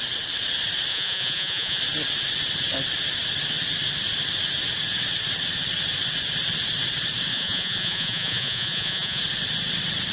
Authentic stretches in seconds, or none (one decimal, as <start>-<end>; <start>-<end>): 0.0-0.9; 1.8-7.3; 9.2-10.1